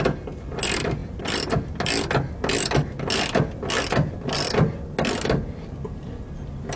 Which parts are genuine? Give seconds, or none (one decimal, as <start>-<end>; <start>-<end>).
0.0-6.8